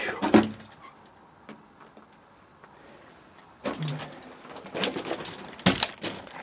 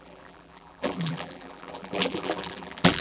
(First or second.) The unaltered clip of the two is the first